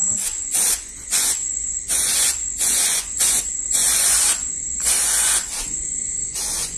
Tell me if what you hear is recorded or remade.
remade